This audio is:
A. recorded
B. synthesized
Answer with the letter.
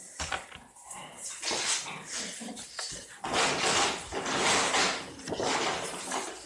A